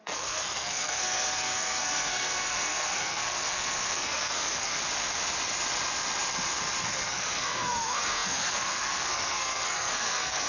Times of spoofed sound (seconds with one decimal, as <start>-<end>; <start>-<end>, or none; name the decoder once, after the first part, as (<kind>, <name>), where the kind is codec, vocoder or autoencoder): 0.0-4.8 (codec, SNAC); 6.8-10.5